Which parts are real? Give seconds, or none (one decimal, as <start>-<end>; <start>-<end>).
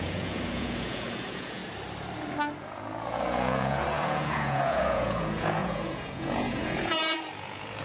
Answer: 1.6-2.6